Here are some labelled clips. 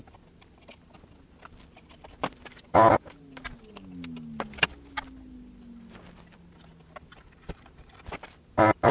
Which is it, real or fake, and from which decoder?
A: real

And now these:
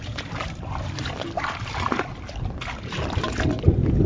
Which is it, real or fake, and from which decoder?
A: real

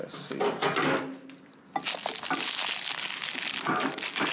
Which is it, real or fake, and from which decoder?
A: real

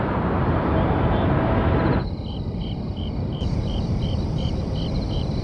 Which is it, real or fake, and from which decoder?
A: fake, vocoder, BigVGAN v2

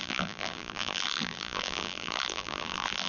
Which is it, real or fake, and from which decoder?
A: fake, vocoder, BigVGAN v2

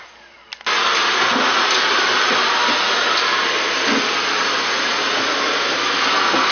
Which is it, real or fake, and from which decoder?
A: real